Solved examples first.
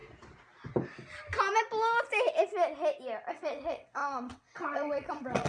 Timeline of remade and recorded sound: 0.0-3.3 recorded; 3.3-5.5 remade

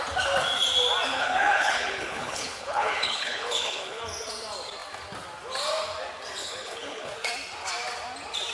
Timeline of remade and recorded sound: 0.0-1.1 recorded; 1.1-4.0 remade; 4.0-6.4 recorded; 6.4-7.1 remade; 7.1-8.5 recorded

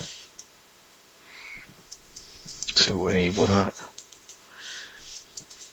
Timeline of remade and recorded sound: 0.0-5.7 remade

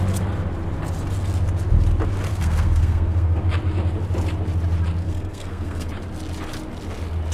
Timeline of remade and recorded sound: 0.0-2.3 recorded; 2.3-3.4 remade; 3.4-5.0 recorded; 5.0-5.9 remade; 5.9-7.3 recorded

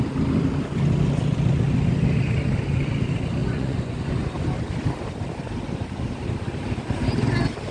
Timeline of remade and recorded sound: 0.0-3.4 recorded; 3.4-4.1 remade; 4.1-7.7 recorded

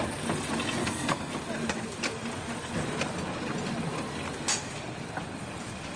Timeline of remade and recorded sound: 0.0-0.8 recorded; 0.8-1.3 remade; 1.3-6.0 recorded